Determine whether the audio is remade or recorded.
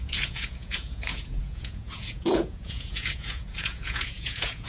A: remade